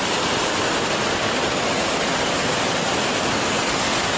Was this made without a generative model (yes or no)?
yes